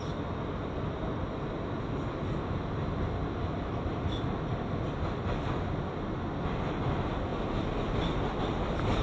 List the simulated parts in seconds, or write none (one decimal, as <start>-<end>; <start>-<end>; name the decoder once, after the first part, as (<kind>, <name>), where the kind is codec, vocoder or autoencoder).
none